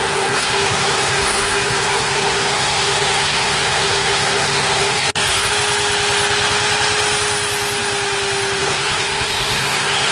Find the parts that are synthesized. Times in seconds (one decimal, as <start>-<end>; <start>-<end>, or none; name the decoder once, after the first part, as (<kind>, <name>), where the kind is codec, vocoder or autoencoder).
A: 0.0-5.5 (codec, SNAC); 8.6-10.1